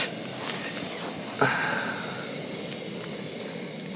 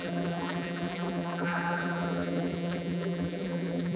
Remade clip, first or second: second